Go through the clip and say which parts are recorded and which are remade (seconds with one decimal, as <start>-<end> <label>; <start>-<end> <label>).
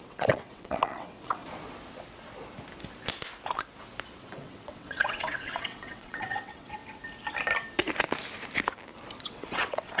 0.0-1.4 remade; 1.4-4.2 recorded; 4.2-6.8 remade; 6.8-9.2 recorded; 9.2-10.0 remade